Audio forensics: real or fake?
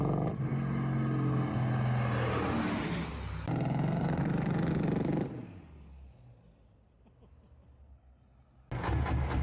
real